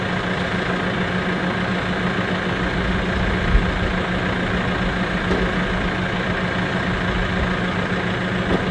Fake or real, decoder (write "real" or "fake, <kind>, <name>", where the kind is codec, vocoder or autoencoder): real